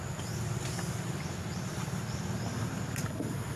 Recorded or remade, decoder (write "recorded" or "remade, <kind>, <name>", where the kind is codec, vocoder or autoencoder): recorded